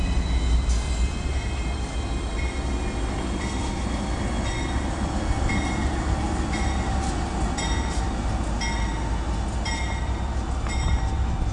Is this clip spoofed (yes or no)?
no